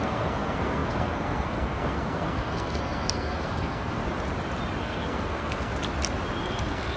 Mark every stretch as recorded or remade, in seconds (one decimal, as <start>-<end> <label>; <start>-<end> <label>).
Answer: 0.0-4.0 remade; 4.0-4.8 recorded; 4.8-5.7 remade; 5.7-6.4 recorded; 6.4-7.0 remade